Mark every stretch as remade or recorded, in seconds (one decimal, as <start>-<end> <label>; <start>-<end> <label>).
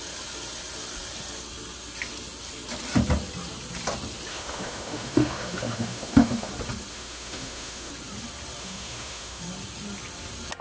0.0-4.3 recorded; 4.3-6.5 remade; 6.5-6.9 recorded; 6.9-7.9 remade; 7.9-8.6 recorded; 8.6-9.4 remade; 9.4-10.6 recorded